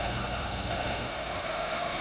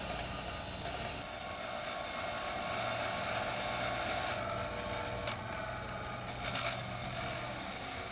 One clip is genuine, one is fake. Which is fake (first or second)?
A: first